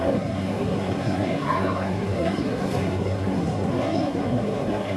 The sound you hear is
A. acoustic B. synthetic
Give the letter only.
B